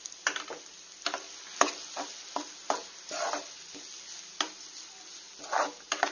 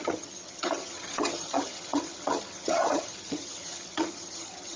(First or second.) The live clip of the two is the first